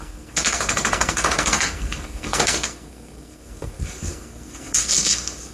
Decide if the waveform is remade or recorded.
remade